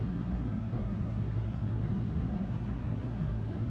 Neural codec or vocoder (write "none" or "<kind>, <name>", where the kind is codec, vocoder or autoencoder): codec, SNAC